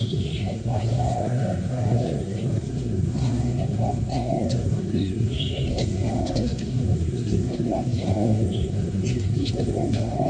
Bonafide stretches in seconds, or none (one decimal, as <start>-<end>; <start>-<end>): none